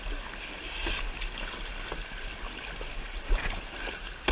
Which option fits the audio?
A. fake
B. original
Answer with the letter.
B